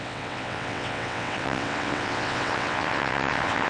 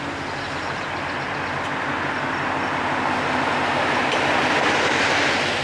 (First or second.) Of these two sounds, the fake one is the first